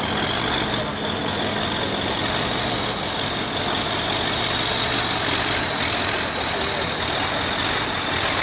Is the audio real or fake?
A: real